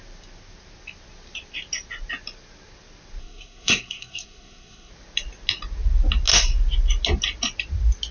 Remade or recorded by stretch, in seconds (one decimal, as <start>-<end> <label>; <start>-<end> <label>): 0.0-3.2 recorded; 3.2-4.9 remade; 4.9-8.1 recorded